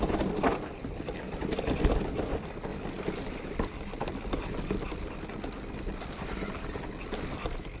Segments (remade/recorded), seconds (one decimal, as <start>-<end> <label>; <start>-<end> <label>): 0.0-7.8 recorded